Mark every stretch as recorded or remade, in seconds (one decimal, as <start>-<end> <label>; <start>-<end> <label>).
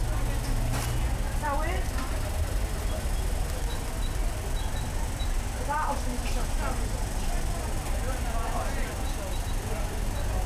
0.0-10.5 recorded